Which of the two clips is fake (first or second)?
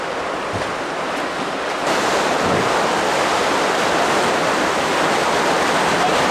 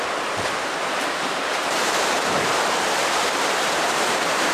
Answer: second